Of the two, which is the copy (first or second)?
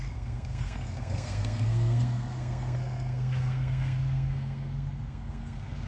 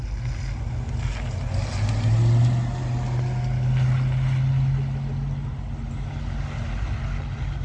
first